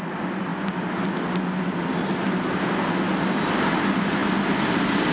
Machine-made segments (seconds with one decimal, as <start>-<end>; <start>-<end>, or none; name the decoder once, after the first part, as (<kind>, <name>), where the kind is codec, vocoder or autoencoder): none